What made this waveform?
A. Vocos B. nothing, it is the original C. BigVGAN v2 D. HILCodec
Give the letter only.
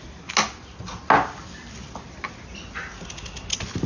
B